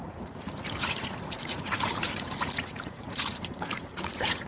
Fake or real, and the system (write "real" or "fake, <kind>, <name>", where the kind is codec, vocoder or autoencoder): fake, vocoder, Vocos